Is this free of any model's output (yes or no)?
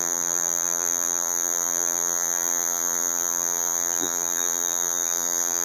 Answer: no